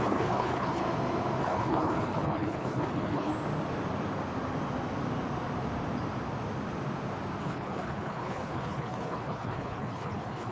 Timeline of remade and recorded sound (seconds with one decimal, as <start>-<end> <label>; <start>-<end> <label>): 0.0-0.8 remade; 0.8-1.4 recorded; 1.4-3.3 remade; 3.3-7.4 recorded; 7.4-10.5 remade